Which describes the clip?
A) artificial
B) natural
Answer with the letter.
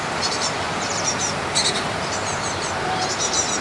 A